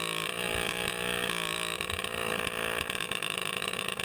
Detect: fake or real fake